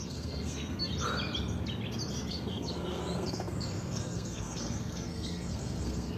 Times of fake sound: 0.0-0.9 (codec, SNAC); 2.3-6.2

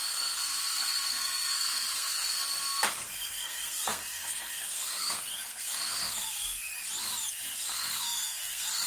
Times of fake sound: 0.0-6.7 (codec, SNAC); 7.3-8.9

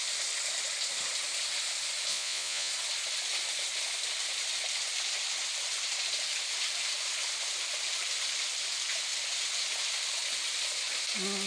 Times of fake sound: 2.1-2.7 (vocoder, Vocos)

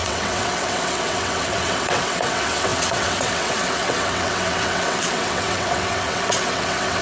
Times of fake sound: 0.0-7.0 (vocoder, WaveNeXt)

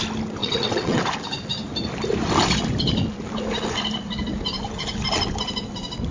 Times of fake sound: 0.4-1.0 (vocoder, WaveNeXt)